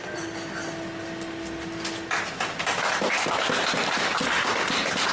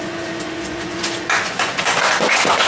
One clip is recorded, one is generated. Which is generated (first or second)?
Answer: second